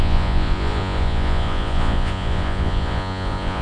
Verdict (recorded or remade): remade